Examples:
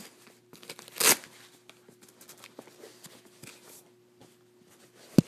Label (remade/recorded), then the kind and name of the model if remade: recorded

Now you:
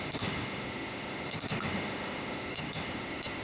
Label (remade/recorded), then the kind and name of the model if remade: remade, autoencoder, DAC-VAE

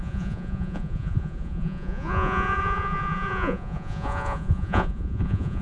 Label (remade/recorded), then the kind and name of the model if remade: remade, vocoder, Vocos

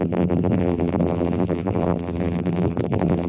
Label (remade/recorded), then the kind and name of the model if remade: remade, vocoder, BigVGAN v2